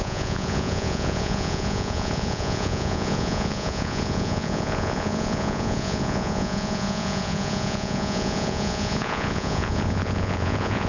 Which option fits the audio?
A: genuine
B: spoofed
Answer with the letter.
B